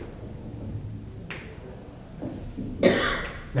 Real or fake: real